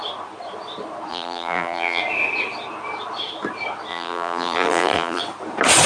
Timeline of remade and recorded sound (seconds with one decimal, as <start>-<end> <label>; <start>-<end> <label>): 0.0-1.1 recorded; 1.1-2.0 remade; 2.0-3.9 recorded; 3.9-5.2 remade; 5.2-5.9 recorded